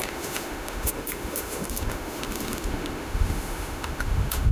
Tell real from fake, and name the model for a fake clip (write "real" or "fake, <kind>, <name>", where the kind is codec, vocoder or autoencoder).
fake, autoencoder, DAC-VAE